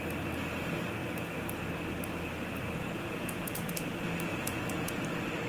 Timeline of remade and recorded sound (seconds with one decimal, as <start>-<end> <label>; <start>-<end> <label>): 0.0-2.8 recorded; 2.8-3.7 remade; 3.7-4.3 recorded; 4.3-4.9 remade; 4.9-5.5 recorded